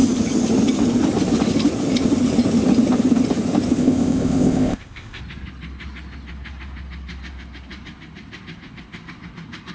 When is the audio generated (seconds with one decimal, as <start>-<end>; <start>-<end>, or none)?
3.8-5.2